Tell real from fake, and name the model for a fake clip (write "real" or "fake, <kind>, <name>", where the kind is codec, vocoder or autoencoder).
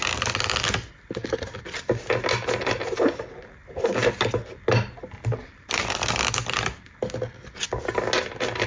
real